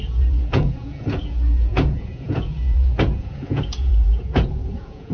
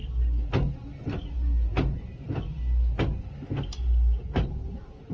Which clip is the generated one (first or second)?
first